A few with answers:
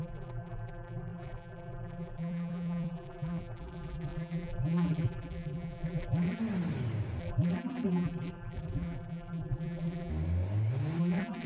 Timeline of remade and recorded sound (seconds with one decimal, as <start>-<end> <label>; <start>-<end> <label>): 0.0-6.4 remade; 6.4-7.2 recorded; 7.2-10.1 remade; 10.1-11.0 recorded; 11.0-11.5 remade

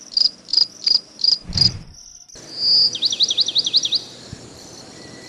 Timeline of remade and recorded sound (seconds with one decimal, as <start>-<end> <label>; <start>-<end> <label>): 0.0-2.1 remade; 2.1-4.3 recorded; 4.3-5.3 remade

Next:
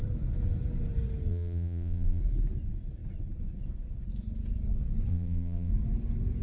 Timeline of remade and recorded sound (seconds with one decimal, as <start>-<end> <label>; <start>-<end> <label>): 0.0-1.3 recorded; 1.3-2.2 remade; 2.2-5.1 recorded; 5.1-5.7 remade; 5.7-6.4 recorded